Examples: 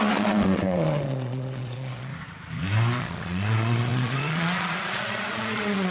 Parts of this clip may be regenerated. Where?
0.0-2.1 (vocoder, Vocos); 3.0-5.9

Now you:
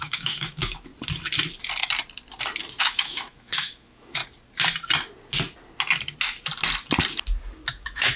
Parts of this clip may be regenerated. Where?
0.0-0.9 (autoencoder, DAC-VAE); 2.8-4.2; 7.7-8.2

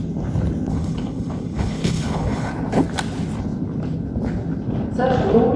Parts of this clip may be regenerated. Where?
0.7-2.5 (codec, HILCodec)

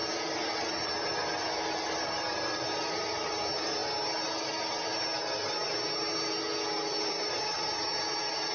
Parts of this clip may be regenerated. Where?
none

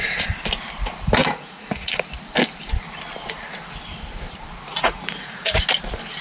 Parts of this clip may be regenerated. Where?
1.2-1.9 (vocoder, Vocos); 4.7-5.5

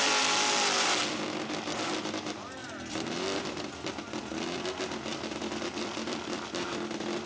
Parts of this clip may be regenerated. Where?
2.6-4.2 (vocoder, BigVGAN v2); 5.1-7.3